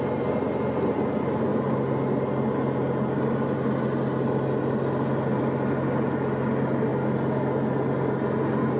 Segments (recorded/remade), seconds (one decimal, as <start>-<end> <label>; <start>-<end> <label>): 0.0-8.8 recorded